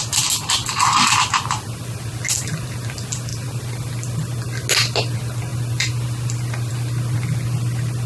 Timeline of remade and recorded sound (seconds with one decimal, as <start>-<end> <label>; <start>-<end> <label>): 0.0-3.3 recorded; 3.3-4.0 remade; 4.0-8.1 recorded